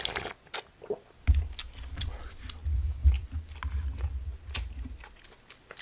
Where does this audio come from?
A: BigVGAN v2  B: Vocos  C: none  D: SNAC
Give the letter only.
C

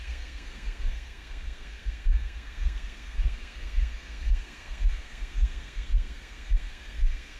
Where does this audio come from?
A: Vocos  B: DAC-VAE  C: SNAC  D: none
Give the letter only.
C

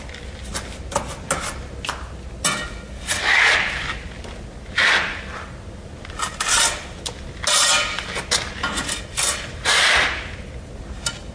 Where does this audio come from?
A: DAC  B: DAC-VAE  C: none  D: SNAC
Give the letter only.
C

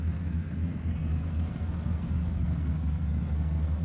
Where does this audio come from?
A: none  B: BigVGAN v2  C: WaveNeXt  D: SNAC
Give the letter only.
D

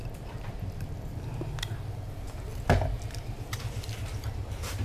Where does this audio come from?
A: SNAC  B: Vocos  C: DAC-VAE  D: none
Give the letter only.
D